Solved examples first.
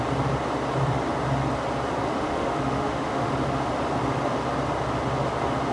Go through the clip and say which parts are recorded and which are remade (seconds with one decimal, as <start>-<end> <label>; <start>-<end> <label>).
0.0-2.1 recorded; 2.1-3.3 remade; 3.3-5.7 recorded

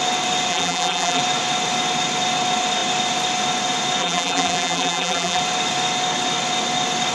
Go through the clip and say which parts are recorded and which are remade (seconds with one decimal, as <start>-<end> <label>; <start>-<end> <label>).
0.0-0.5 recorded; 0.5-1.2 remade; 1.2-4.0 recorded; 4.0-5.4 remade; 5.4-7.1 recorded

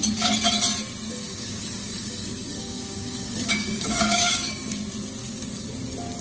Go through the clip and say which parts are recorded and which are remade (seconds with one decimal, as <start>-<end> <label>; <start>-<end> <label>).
0.0-1.1 recorded; 1.1-4.8 remade; 4.8-5.2 recorded; 5.2-5.7 remade; 5.7-6.2 recorded